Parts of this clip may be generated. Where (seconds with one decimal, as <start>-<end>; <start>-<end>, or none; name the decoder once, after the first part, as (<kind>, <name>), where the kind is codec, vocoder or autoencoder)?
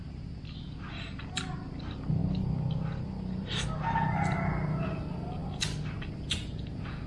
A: none